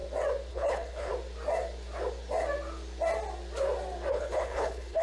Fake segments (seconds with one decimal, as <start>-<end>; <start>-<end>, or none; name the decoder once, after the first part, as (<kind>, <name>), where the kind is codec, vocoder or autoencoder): 0.5-1.1 (codec, HILCodec); 4.1-5.0